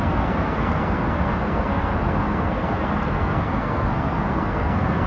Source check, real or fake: fake